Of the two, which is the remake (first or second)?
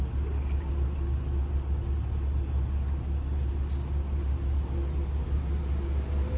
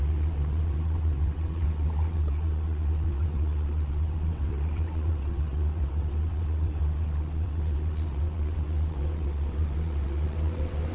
second